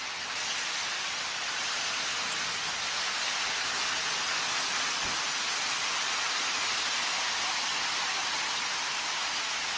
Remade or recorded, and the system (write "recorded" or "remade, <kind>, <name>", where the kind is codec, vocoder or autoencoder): recorded